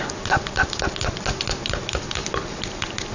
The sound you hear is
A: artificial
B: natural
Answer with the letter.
B